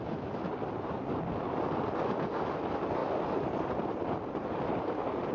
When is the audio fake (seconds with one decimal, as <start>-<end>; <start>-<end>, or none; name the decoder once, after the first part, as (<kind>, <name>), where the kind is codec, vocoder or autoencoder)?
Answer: none